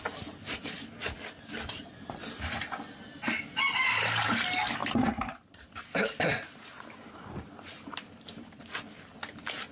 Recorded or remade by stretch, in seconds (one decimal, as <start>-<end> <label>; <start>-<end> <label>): 0.0-4.8 recorded; 4.8-8.5 remade; 8.5-9.7 recorded